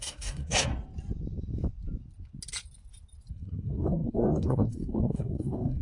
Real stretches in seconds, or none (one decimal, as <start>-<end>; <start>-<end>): 0.7-3.3